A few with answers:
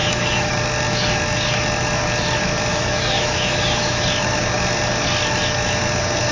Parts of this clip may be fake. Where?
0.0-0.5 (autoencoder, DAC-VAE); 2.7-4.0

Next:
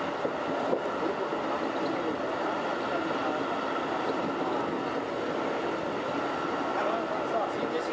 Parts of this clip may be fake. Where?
none

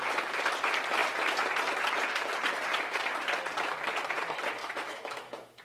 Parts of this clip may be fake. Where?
4.6-5.6 (autoencoder, DAC-VAE)

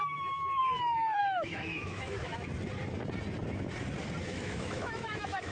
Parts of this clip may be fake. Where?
0.0-0.6 (autoencoder, DAC-VAE); 1.2-2.3; 4.2-5.5

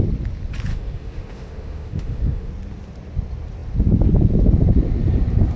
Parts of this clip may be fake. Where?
0.7-2.5 (autoencoder, DAC-VAE)

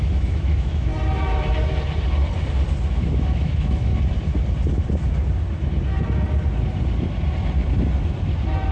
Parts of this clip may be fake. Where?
0.0-0.9 (autoencoder, DAC-VAE); 2.9-3.9